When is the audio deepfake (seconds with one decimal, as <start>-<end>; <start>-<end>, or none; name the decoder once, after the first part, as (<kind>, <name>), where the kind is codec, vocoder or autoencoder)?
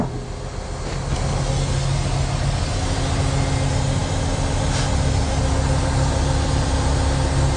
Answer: none